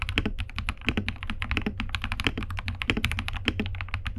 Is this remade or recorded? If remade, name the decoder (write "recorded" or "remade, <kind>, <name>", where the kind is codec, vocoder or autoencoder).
remade, vocoder, BigVGAN v2